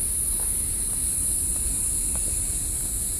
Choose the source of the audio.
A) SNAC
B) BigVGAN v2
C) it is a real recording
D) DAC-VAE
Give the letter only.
C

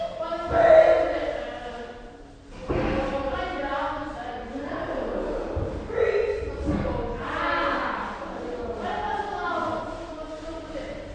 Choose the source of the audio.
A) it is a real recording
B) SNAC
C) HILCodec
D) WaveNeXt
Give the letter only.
A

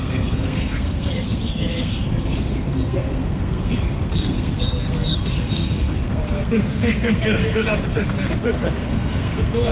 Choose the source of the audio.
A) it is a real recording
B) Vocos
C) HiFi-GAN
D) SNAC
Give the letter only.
D